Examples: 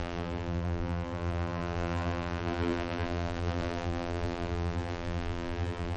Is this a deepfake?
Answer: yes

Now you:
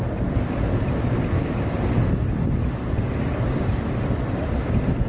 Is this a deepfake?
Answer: no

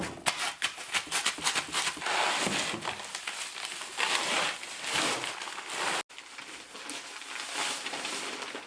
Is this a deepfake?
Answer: no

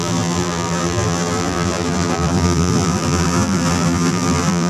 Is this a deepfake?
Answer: yes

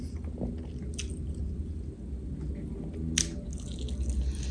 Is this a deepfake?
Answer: no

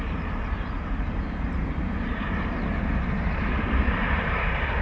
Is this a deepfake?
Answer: yes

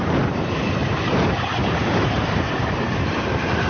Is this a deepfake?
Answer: yes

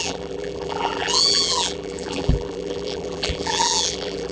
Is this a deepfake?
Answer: yes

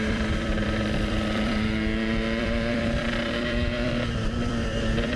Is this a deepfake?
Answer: yes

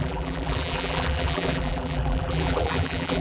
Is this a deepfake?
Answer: yes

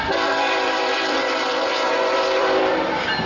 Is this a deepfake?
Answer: yes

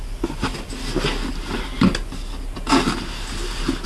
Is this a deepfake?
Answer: no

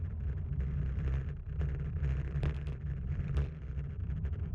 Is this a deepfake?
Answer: yes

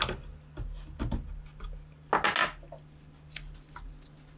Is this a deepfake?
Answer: no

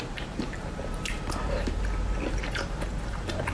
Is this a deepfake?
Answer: yes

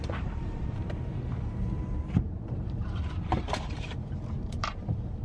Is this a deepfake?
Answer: yes